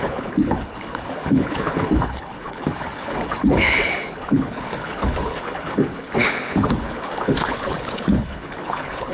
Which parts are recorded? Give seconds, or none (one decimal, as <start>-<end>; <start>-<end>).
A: none